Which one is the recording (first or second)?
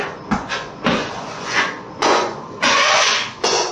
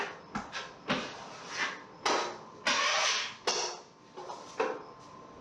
second